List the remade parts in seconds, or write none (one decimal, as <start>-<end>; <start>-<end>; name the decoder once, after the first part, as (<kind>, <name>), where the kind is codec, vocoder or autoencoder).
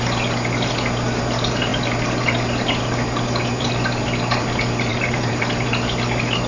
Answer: 4.9-5.4 (vocoder, BigVGAN v2)